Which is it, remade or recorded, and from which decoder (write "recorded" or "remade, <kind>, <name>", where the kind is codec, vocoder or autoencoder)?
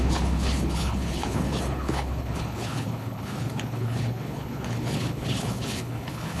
remade, codec, HILCodec